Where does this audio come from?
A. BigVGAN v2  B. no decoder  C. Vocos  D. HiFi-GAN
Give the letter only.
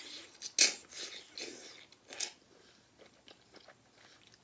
B